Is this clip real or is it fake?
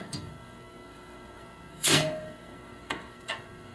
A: fake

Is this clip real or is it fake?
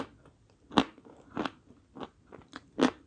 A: real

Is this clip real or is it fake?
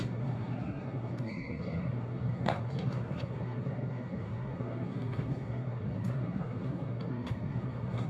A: fake